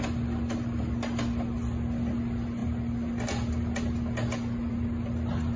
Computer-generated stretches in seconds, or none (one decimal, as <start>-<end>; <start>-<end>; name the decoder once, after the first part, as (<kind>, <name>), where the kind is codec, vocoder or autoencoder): none